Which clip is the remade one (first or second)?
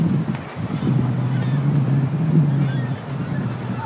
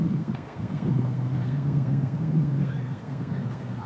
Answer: second